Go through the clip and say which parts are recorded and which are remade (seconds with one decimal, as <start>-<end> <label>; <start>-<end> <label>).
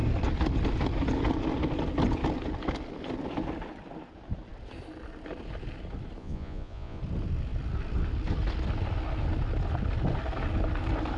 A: 0.0-6.2 recorded; 6.2-7.0 remade; 7.0-11.2 recorded